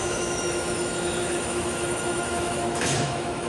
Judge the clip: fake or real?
fake